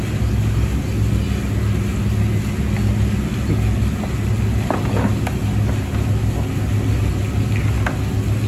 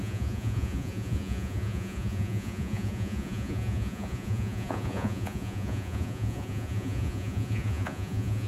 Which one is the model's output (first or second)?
second